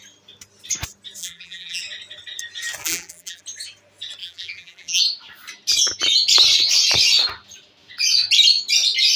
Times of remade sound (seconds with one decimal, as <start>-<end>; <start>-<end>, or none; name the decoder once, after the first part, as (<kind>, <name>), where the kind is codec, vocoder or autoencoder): 1.2-1.8 (vocoder, BigVGAN v2); 2.8-3.4; 4.2-5.0

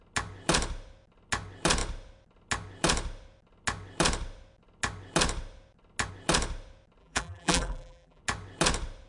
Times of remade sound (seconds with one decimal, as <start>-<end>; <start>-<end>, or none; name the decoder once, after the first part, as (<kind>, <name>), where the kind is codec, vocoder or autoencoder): 7.0-8.2 (vocoder, BigVGAN v2)

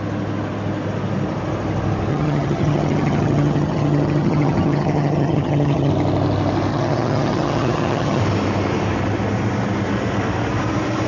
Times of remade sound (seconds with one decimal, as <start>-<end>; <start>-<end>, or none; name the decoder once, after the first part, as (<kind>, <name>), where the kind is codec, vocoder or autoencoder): 2.1-5.9 (vocoder, HiFi-GAN); 6.7-8.2

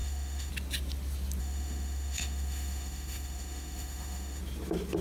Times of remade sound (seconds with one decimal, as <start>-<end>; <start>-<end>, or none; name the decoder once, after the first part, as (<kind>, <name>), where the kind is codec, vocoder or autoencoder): 0.0-0.5 (autoencoder, DAC-VAE); 1.4-4.4